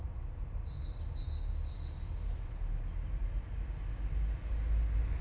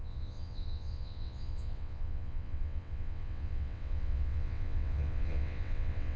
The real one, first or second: first